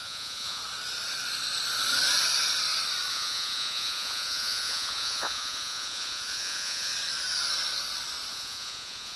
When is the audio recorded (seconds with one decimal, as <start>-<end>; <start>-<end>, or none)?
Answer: 0.6-3.1; 6.9-8.3